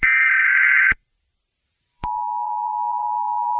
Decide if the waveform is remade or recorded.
remade